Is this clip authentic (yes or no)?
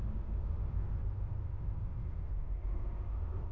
no